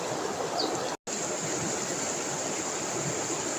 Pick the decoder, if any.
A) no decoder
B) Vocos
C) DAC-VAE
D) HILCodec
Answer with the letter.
A